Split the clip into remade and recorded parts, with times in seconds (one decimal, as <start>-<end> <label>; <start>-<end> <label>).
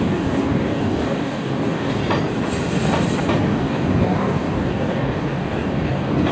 0.0-2.0 remade; 2.0-3.4 recorded; 3.4-6.3 remade